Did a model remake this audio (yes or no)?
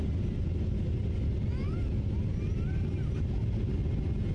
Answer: no